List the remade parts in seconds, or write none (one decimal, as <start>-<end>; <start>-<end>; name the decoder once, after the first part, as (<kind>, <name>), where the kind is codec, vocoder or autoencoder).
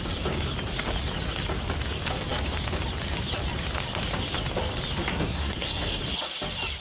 5.1-6.0 (codec, SNAC)